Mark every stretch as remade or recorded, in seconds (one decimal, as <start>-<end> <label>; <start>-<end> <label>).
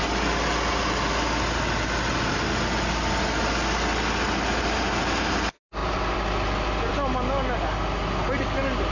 0.0-5.8 recorded; 5.8-6.9 remade; 6.9-8.9 recorded